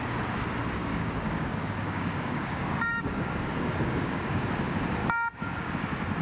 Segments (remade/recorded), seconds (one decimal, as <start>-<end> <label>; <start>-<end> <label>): 0.0-0.8 recorded; 0.8-4.5 remade; 4.5-5.0 recorded; 5.0-5.7 remade; 5.7-6.2 recorded